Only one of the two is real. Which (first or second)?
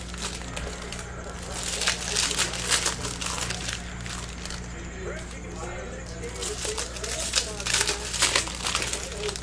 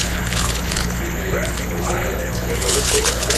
first